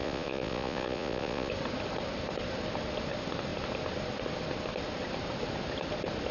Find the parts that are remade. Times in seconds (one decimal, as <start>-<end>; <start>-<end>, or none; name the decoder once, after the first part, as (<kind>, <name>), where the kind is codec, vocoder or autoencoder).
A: 0.0-1.5 (vocoder, Vocos)